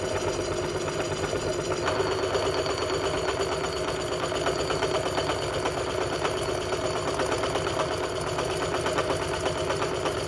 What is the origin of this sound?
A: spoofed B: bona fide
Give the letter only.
B